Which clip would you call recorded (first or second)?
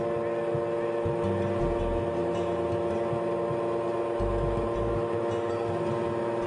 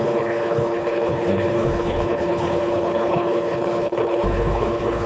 first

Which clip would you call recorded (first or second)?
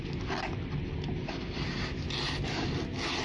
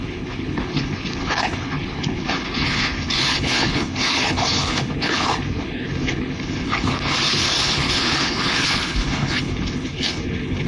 first